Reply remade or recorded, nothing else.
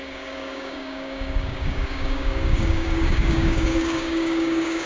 remade